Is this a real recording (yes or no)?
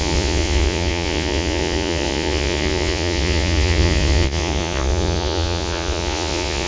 no